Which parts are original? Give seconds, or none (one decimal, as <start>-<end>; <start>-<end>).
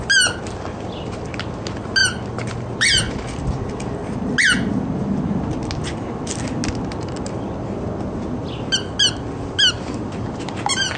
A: 0.0-11.0